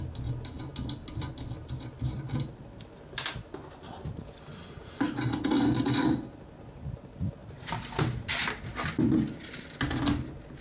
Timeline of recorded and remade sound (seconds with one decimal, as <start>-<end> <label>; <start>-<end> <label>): 0.0-10.6 recorded